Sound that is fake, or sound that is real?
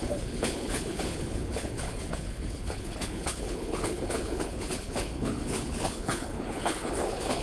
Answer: fake